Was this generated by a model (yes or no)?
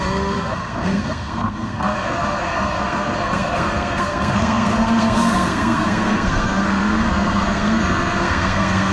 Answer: yes